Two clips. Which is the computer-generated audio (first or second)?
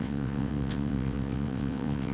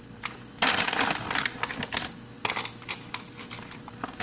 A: first